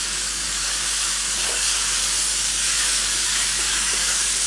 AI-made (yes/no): yes